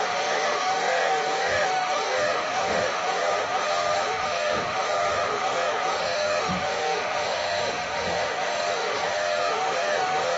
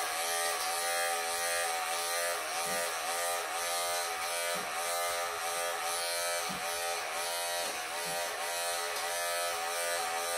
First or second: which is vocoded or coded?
first